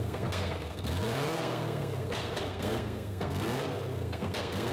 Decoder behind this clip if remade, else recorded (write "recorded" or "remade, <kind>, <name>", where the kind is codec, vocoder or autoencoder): remade, codec, SNAC